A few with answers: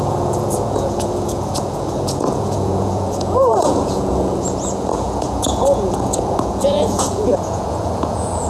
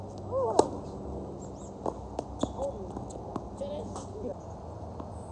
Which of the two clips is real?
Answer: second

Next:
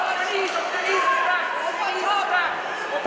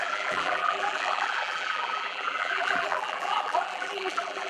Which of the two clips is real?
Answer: first